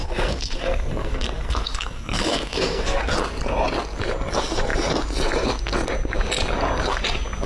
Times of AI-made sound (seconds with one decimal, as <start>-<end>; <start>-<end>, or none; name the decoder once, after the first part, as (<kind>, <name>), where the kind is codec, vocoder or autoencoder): 0.0-3.1 (codec, SNAC)